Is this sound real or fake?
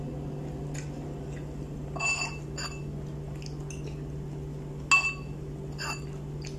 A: real